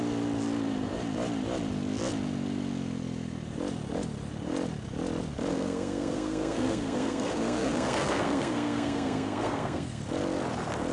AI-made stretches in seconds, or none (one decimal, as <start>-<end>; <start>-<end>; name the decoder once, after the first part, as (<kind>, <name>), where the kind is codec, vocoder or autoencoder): 5.5-10.0 (codec, SNAC)